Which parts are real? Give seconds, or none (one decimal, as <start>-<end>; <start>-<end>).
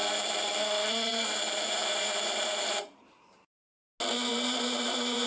0.5-1.1; 3.5-4.3